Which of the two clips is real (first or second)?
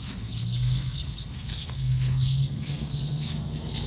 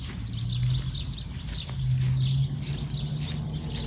second